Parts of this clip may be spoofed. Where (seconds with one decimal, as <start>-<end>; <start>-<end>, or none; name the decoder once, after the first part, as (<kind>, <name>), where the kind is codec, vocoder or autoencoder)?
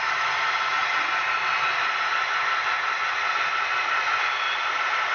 none